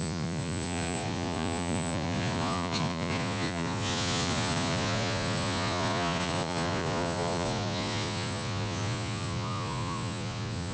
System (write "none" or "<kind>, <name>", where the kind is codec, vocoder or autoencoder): vocoder, Vocos